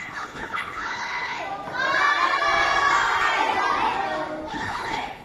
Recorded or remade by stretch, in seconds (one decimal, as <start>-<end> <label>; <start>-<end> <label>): 0.0-1.4 remade; 1.4-4.5 recorded; 4.5-5.2 remade